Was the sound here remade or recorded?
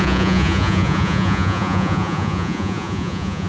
remade